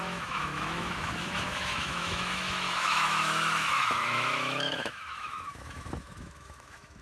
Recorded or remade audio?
remade